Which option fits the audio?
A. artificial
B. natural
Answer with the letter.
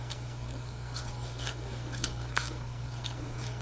A